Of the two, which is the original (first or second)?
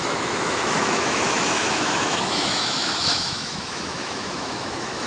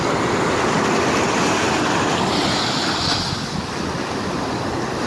second